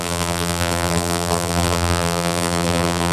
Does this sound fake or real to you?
fake